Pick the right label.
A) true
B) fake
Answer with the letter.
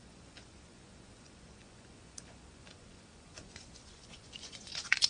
B